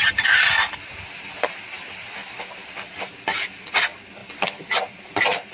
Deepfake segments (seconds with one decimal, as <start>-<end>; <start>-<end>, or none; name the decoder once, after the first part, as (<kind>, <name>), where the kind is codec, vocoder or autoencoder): none